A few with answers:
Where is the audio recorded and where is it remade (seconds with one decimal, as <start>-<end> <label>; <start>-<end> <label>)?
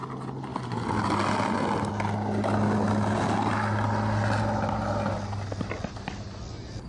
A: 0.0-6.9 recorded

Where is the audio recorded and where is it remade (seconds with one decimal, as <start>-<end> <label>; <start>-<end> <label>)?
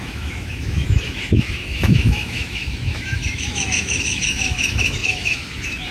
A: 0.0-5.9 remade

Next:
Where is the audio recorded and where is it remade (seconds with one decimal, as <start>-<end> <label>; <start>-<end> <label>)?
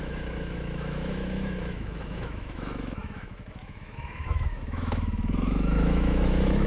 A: 0.0-6.7 remade